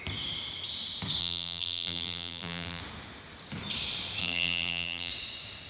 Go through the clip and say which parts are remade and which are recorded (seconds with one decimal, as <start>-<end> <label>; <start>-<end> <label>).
0.0-1.2 recorded; 1.2-2.8 remade; 2.8-4.2 recorded; 4.2-5.1 remade; 5.1-5.7 recorded